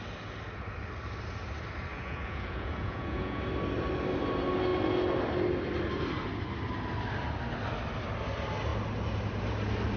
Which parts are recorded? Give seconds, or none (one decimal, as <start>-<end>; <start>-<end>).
0.0-1.9; 3.4-10.0